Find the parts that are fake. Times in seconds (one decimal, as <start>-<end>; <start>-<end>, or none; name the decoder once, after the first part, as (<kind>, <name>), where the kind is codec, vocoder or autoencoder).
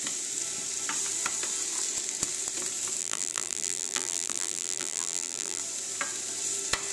3.0-5.6 (vocoder, BigVGAN v2)